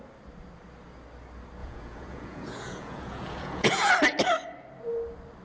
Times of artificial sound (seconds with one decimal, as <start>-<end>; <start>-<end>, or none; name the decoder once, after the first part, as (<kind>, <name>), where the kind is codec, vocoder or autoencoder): 1.6-3.9 (vocoder, Vocos)